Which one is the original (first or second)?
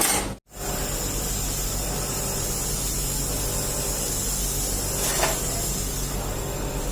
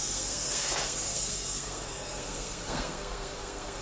first